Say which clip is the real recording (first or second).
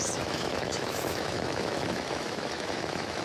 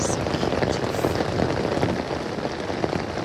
second